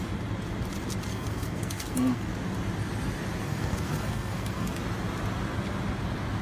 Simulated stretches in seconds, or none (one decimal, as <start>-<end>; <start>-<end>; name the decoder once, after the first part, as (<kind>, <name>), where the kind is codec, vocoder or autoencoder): 1.1-2.3 (codec, SNAC); 3.4-4.8